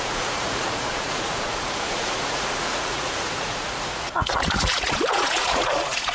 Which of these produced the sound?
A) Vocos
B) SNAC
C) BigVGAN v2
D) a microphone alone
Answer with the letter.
A